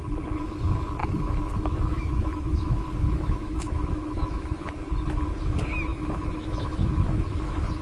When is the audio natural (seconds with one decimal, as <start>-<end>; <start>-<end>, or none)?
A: 0.0-1.0; 4.7-5.9